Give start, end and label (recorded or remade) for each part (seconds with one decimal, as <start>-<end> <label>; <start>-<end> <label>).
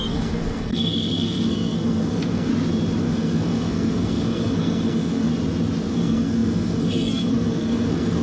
0.0-2.5 remade; 2.5-3.0 recorded; 3.0-5.3 remade; 5.3-5.9 recorded; 5.9-8.2 remade